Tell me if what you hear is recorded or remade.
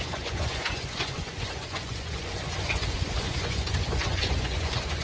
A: remade